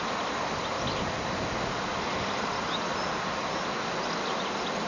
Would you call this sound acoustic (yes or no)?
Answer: yes